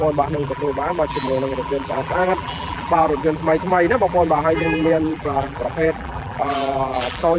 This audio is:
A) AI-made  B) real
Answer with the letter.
A